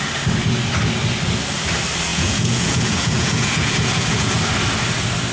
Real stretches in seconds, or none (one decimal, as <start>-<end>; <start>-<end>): 0.0-2.1; 4.4-5.3